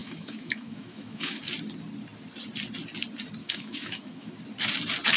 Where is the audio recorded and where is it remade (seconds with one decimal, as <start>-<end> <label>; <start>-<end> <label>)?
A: 0.0-1.4 remade; 1.4-3.4 recorded; 3.4-4.3 remade; 4.3-5.2 recorded